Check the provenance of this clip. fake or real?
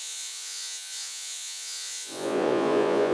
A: fake